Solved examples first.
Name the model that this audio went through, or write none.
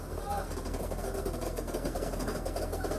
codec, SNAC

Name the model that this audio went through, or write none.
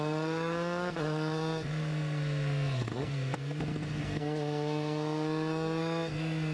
codec, SNAC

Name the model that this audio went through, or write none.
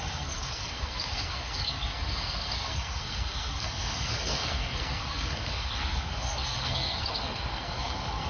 codec, SNAC